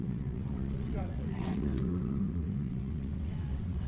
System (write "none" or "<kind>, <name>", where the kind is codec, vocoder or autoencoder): vocoder, WaveNeXt